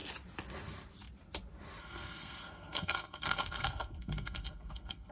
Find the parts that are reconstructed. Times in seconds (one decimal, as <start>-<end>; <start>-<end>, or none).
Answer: 1.8-5.1

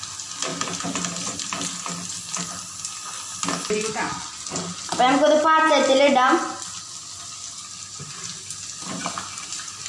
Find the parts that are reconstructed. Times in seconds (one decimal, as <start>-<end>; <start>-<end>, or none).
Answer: none